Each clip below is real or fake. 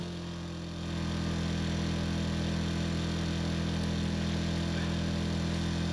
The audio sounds real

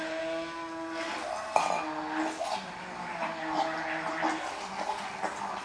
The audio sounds real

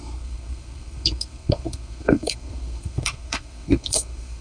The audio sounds fake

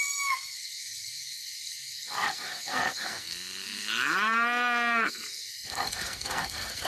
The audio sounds fake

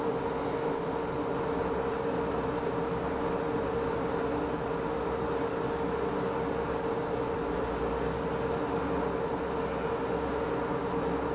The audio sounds real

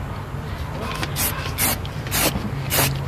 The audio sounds real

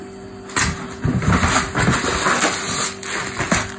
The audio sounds real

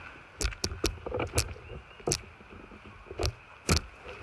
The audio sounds real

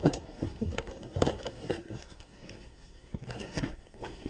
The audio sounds fake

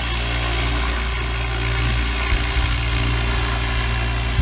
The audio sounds real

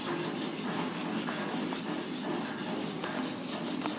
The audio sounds real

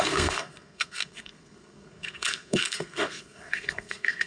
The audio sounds fake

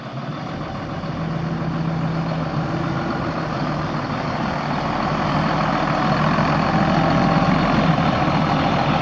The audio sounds real